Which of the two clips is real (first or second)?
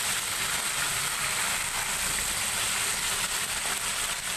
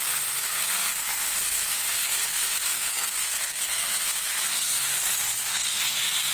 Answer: first